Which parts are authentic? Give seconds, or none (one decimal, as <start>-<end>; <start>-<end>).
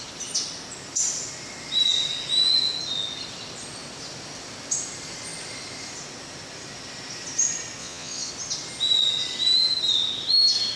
0.0-7.8; 8.3-10.8